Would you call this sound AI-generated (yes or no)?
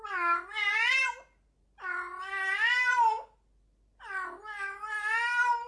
no